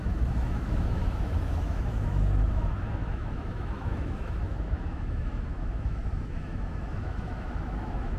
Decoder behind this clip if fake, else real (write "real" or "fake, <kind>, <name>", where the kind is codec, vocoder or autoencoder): fake, autoencoder, DAC-VAE